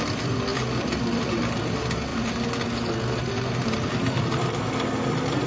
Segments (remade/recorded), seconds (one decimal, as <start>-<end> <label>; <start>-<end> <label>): 0.0-5.5 recorded